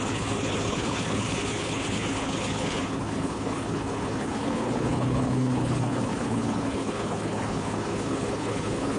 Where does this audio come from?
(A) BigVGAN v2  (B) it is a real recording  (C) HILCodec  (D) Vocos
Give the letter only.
C